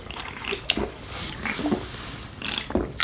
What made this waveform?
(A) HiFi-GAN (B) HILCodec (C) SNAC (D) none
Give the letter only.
D